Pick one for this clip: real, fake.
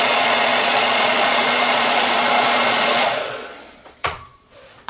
fake